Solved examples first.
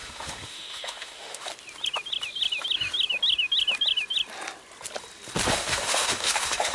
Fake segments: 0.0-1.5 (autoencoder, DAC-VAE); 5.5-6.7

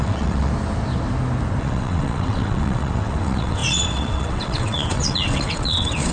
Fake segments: 0.0-0.5 (vocoder, WaveNeXt); 1.6-6.1

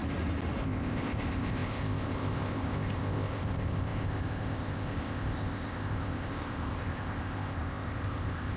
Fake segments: 0.6-8.6 (codec, ZipCodec)

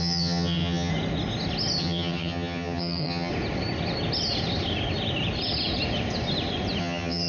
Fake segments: 0.0-0.9 (vocoder, HiFi-GAN); 1.8-3.3; 6.8-7.3

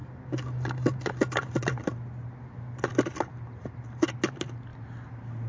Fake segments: 0.0-2.5 (vocoder, BigVGAN v2); 4.7-5.5

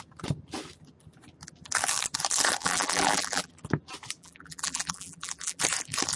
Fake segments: 2.6-3.5 (vocoder, BigVGAN v2); 4.2-5.6